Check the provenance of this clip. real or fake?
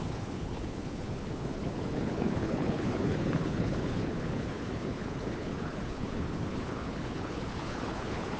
fake